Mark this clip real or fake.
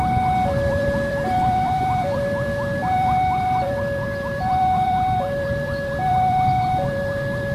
fake